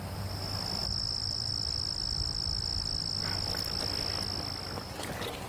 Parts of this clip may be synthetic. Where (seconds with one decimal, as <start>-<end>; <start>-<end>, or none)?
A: 0.8-1.5